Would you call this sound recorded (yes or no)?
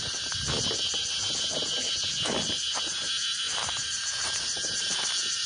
yes